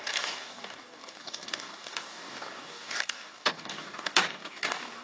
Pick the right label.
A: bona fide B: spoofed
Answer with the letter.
B